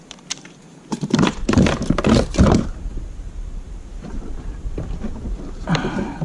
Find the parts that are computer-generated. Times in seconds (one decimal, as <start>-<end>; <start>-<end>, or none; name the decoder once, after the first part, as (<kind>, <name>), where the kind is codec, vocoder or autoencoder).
0.0-2.9 (vocoder, BigVGAN v2); 3.5-6.2